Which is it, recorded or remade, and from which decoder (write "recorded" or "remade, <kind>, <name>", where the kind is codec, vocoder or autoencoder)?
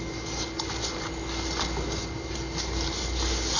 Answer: recorded